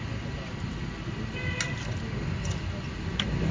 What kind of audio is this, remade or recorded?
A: recorded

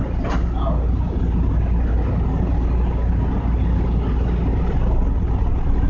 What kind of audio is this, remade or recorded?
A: recorded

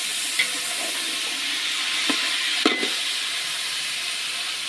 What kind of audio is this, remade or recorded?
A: recorded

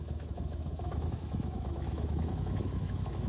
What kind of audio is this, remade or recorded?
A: remade